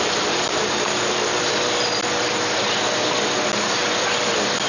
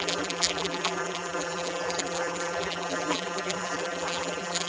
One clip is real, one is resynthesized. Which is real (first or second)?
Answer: first